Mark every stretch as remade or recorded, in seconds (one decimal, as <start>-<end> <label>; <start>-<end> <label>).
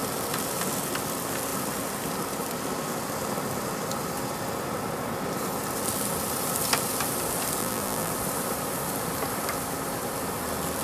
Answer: 0.0-7.6 recorded; 7.6-8.1 remade; 8.1-10.8 recorded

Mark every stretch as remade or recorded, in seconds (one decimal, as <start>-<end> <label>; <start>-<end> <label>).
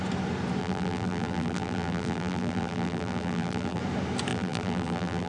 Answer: 0.0-0.6 recorded; 0.6-3.8 remade; 3.8-4.3 recorded; 4.3-5.3 remade